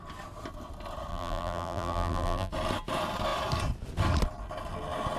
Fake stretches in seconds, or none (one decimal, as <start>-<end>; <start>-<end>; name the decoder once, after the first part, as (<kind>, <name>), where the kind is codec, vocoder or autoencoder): 1.1-2.5 (vocoder, BigVGAN v2)